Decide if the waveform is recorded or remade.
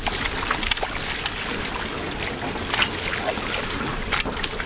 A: remade